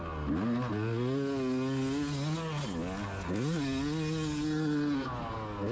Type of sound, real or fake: real